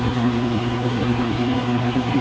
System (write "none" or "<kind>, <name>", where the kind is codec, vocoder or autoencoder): codec, SNAC